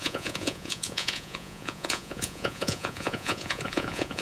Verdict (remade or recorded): remade